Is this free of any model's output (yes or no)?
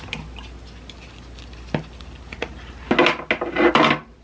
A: yes